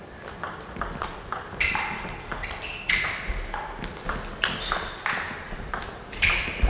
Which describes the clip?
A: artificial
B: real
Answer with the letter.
B